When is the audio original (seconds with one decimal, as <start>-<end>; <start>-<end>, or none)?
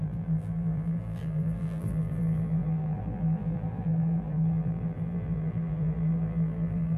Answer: none